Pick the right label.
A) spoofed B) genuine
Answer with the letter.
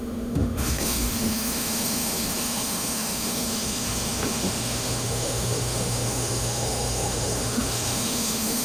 A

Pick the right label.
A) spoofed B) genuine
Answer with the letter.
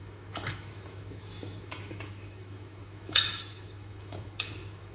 A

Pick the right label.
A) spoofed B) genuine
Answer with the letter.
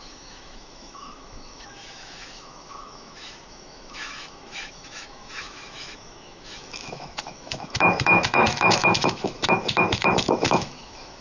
A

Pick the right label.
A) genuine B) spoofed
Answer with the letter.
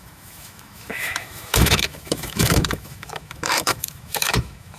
B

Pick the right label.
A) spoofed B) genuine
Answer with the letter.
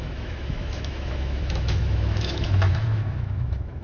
A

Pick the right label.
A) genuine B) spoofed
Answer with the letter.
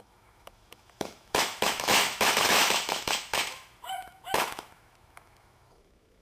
B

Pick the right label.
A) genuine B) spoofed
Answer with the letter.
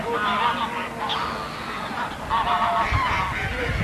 A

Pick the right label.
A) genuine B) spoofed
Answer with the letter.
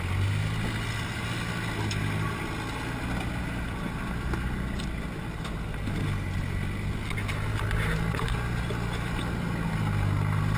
A